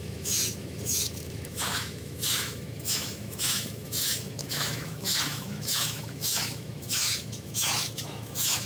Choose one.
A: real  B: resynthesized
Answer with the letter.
B